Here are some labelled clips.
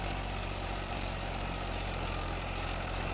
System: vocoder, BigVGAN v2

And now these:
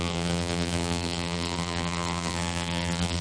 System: vocoder, BigVGAN v2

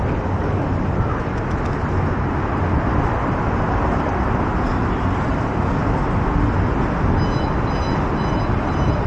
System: none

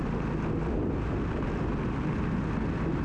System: none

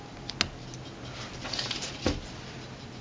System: none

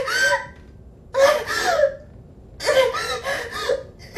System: none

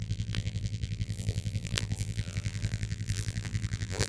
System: vocoder, BigVGAN v2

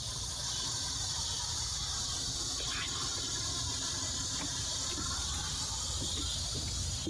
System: none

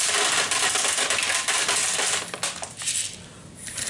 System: none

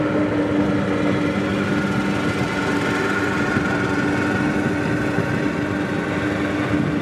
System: none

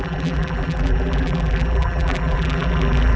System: vocoder, BigVGAN v2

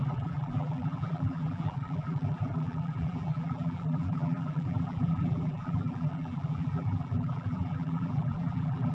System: vocoder, BigVGAN v2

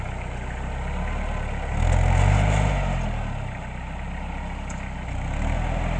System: none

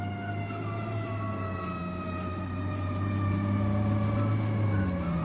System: none